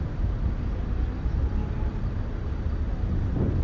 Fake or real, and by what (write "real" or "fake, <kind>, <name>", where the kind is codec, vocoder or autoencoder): real